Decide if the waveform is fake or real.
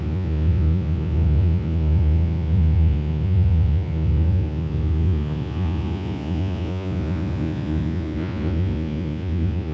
fake